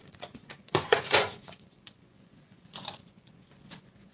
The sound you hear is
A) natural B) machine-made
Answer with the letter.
B